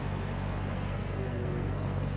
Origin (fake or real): fake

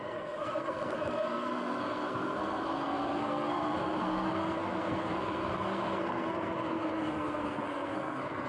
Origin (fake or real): fake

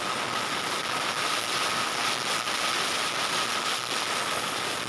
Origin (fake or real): real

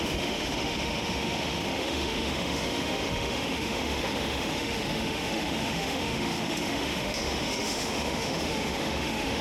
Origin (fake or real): fake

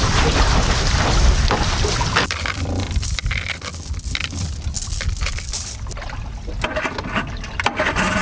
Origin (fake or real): real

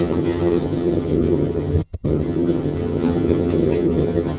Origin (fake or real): fake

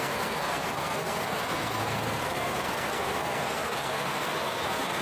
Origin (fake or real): fake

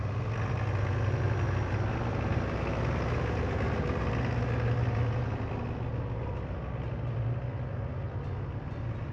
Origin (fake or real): real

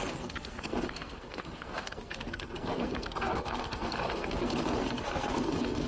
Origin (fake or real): fake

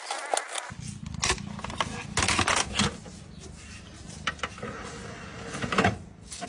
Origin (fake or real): real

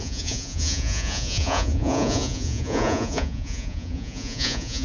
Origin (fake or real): fake